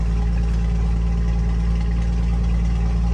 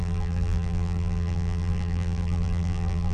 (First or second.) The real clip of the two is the first